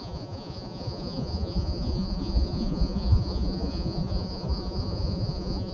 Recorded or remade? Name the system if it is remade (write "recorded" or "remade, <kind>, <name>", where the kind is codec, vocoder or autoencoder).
remade, vocoder, Vocos